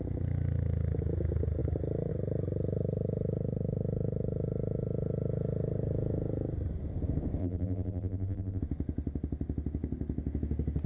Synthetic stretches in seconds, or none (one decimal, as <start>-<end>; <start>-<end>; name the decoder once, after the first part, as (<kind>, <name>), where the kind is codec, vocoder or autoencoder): 7.4-8.6 (vocoder, BigVGAN v2)